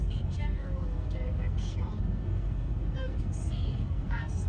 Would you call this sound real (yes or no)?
no